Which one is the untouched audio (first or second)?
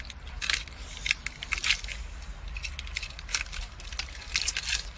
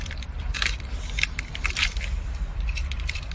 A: first